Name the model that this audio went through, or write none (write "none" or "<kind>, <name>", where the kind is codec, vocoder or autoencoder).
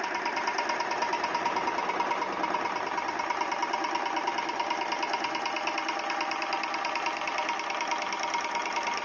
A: none